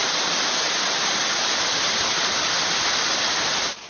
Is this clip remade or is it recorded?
recorded